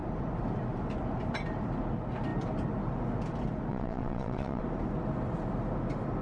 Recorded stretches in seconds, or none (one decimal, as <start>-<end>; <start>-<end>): 0.0-3.7; 4.6-6.2